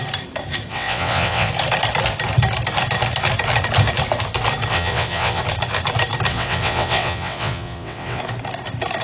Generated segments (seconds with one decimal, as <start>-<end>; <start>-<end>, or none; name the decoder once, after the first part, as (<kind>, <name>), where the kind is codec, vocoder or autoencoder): 0.7-1.5 (vocoder, WaveNeXt); 4.7-5.4; 6.3-8.2